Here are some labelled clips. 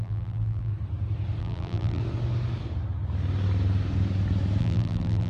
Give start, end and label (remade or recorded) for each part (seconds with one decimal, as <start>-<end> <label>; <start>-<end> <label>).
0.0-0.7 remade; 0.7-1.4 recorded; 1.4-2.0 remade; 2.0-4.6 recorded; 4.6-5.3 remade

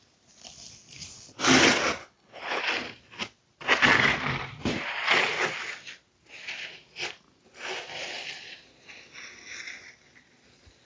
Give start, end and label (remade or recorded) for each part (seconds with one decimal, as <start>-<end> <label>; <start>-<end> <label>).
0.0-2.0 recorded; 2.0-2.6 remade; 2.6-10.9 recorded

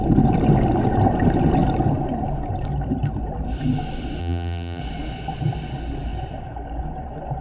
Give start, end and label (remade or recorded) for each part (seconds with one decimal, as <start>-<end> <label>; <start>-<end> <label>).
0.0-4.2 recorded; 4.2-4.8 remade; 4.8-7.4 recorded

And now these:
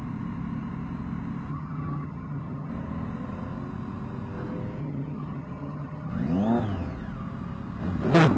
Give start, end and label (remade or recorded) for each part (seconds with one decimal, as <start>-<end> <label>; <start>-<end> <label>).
0.0-1.5 recorded; 1.5-2.7 remade; 2.7-4.8 recorded; 4.8-6.1 remade; 6.1-8.4 recorded

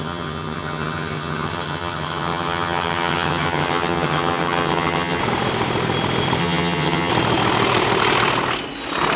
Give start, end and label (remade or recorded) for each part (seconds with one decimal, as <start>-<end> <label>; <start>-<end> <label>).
0.0-5.2 remade; 5.2-6.4 recorded; 6.4-7.1 remade; 7.1-9.2 recorded